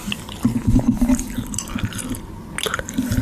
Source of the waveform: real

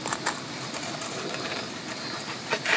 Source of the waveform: real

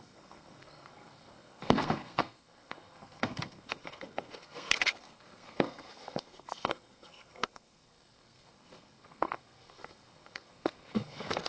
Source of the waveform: fake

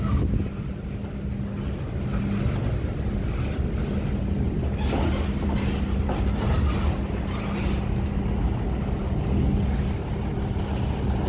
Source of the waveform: real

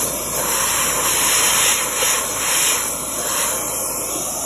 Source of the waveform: real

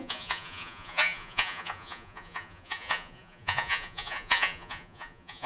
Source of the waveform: fake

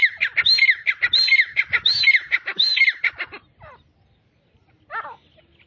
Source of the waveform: real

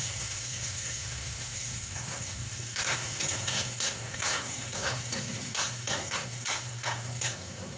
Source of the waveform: fake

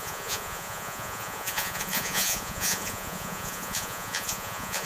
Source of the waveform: fake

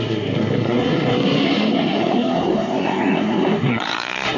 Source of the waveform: fake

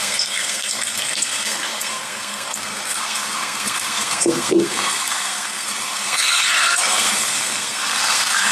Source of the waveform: fake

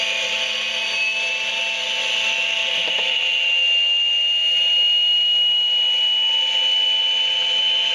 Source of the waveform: real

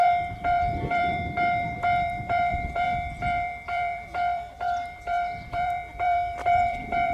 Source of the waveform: fake